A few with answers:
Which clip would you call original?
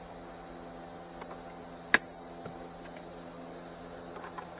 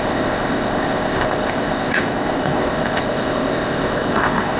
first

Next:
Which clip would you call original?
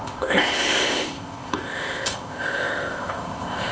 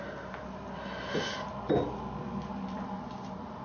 second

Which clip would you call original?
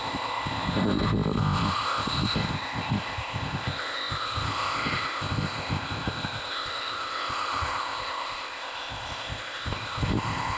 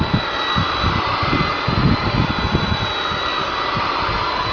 second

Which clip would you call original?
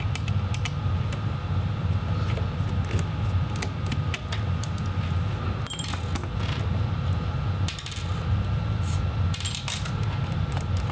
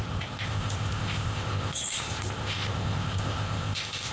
first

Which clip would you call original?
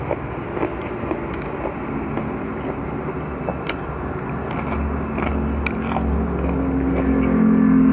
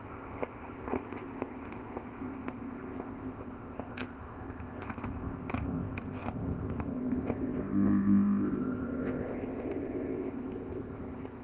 first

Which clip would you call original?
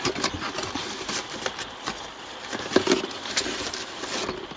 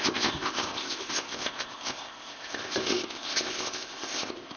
first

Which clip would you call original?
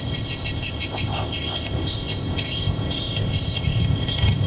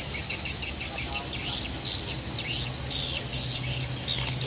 second